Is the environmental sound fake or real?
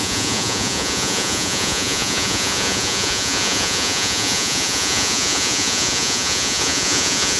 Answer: fake